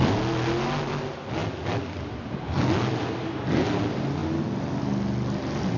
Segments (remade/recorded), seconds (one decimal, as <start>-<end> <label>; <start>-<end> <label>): 0.0-5.8 recorded